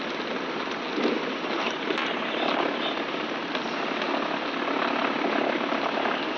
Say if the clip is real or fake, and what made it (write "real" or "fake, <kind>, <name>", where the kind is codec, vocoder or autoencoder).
real